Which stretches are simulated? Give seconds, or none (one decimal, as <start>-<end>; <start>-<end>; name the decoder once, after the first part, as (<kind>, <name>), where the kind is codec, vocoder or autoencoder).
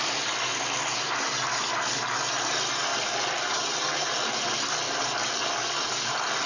none